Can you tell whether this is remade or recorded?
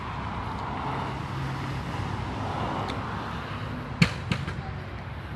recorded